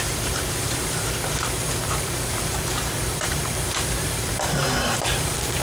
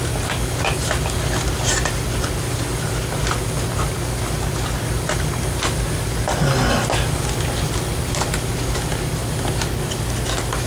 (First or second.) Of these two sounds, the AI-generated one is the first